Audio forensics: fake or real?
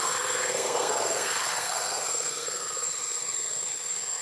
fake